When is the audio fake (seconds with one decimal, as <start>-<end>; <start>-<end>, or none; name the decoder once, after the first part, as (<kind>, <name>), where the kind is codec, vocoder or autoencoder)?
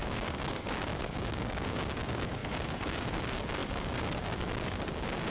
0.0-5.3 (codec, DAC)